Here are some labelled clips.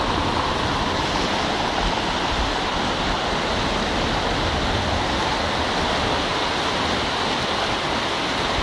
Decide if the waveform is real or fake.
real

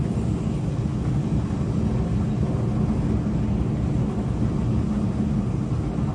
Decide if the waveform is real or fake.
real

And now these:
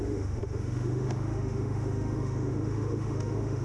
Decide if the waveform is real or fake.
fake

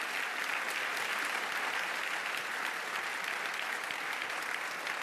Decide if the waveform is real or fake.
real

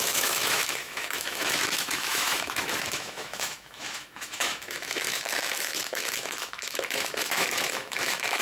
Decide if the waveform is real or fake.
fake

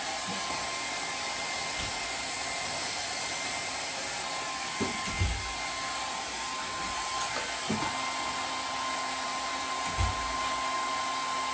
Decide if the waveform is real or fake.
real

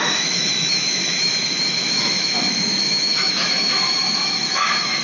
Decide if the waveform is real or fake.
fake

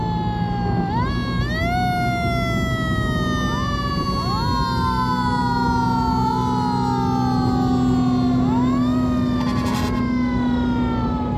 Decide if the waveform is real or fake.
real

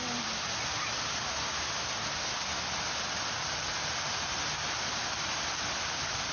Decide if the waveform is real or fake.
real